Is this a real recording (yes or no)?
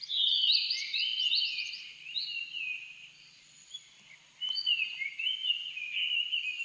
yes